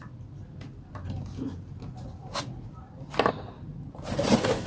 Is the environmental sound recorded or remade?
recorded